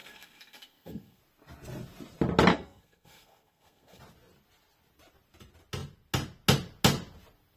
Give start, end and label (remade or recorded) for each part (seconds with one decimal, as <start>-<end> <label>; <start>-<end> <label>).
0.0-1.2 remade; 1.2-2.5 recorded; 2.5-4.0 remade; 4.0-7.6 recorded